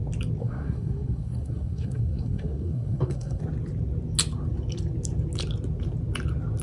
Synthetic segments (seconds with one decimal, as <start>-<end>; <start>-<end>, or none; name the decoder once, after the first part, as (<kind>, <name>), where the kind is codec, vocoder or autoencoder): 0.4-3.4 (codec, SNAC)